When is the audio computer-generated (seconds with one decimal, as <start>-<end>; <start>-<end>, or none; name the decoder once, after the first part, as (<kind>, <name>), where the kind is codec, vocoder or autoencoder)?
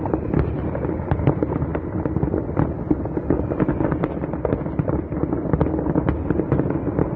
none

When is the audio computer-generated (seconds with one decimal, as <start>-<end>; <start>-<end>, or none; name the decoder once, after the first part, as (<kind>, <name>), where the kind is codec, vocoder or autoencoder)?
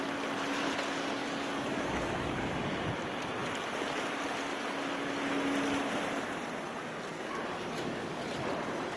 1.2-2.9 (codec, DAC); 7.1-8.2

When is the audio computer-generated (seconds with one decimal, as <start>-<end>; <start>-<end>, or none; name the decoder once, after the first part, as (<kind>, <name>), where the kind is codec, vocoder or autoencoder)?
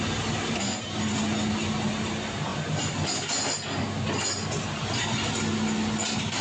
none